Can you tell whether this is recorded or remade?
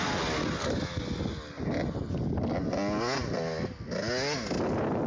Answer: recorded